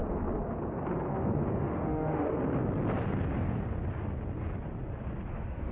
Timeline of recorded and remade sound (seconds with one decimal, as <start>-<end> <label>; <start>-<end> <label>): 0.0-1.6 recorded; 1.6-2.3 remade; 2.3-5.3 recorded; 5.3-5.7 remade